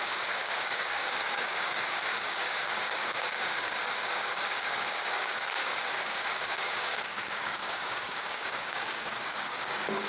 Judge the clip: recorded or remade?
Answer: remade